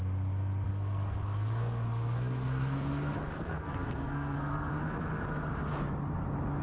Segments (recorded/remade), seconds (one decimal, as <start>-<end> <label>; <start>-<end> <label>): 0.0-0.7 recorded; 0.7-4.7 remade; 4.7-6.6 recorded